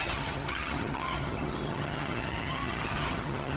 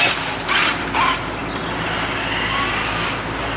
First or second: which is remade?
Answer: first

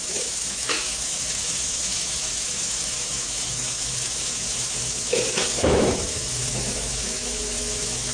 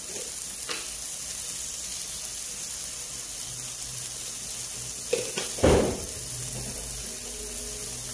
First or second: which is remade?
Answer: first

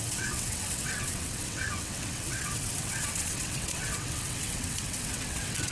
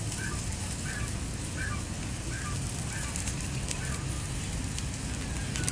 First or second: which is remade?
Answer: first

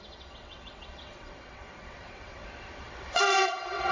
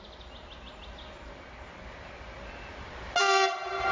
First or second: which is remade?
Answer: first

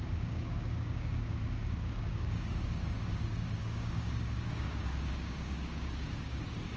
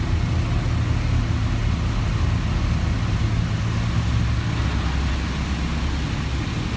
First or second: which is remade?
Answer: first